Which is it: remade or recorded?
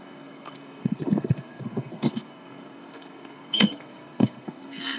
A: remade